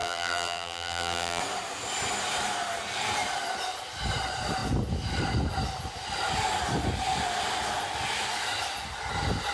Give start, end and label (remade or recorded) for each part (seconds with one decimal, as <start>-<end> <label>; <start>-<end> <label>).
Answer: 0.0-1.4 remade; 1.4-9.5 recorded